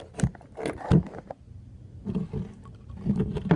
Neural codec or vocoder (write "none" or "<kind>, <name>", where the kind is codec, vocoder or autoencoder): none